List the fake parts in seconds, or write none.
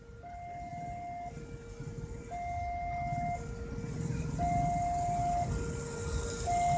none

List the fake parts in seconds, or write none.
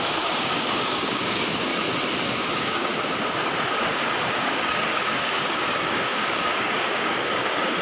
0.0-1.7 (codec, DAC); 2.5-2.9; 3.9-7.8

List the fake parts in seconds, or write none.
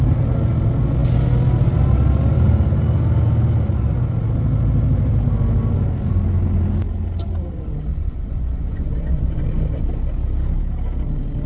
7.9-9.4 (vocoder, Vocos)